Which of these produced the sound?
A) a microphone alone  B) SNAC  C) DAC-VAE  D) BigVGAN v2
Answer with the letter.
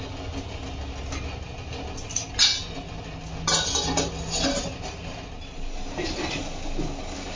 A